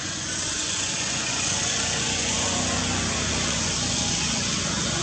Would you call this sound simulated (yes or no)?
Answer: yes